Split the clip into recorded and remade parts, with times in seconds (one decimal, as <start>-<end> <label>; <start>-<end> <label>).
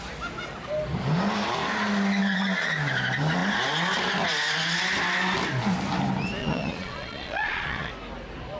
0.0-2.2 recorded; 2.2-2.7 remade; 2.7-6.4 recorded; 6.4-7.9 remade; 7.9-8.6 recorded